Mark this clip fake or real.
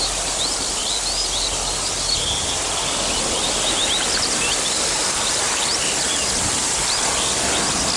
real